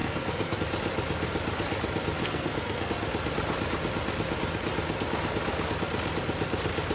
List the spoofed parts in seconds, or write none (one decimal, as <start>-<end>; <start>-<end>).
0.0-0.6; 2.2-2.9

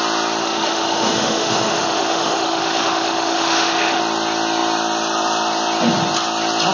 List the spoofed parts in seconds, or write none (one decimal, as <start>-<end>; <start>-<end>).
0.4-4.0

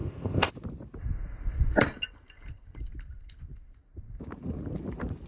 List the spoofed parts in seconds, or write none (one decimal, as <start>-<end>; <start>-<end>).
0.0-0.5

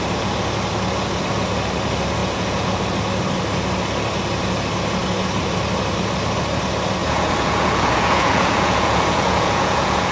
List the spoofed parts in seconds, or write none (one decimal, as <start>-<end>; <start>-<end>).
2.2-2.8; 7.0-10.1

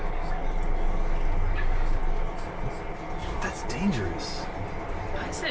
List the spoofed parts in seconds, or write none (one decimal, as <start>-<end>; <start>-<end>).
0.0-0.4; 1.5-2.0

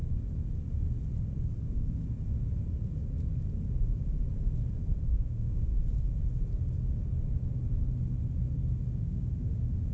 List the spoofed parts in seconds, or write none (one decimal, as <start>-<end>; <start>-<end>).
1.6-2.0; 5.0-5.7; 9.0-9.9

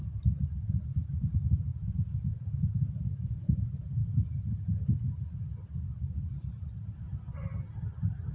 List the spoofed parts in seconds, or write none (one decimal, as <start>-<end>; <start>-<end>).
0.7-4.0